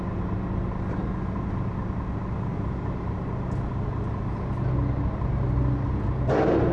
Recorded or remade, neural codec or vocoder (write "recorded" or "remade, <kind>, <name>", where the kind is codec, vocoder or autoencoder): recorded